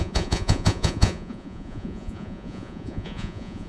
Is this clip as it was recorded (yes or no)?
no